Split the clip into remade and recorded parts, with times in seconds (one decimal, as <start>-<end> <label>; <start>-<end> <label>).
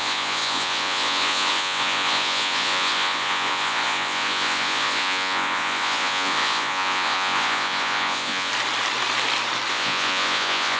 0.0-8.5 remade; 8.5-9.7 recorded; 9.7-10.8 remade